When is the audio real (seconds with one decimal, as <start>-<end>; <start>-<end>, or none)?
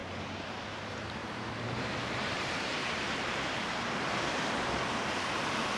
0.0-1.2; 4.7-5.8